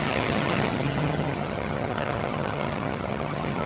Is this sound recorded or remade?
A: remade